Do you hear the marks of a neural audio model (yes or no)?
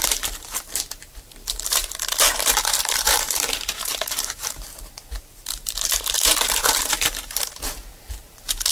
yes